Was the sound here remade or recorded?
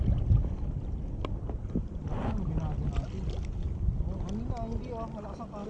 recorded